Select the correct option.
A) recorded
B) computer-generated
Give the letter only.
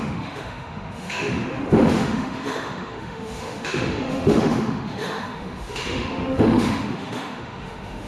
B